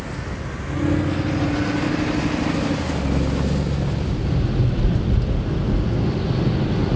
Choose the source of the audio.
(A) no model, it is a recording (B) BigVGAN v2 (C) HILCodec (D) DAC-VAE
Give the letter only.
A